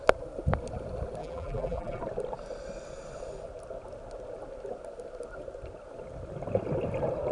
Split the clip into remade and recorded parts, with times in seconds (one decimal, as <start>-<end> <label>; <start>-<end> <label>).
0.0-1.2 recorded; 1.2-2.0 remade; 2.0-7.3 recorded